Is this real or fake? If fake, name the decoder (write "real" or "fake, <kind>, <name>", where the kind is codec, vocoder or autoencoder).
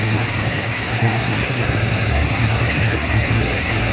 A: fake, codec, SNAC